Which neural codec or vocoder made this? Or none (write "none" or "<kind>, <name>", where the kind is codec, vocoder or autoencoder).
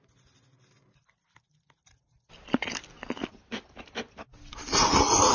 none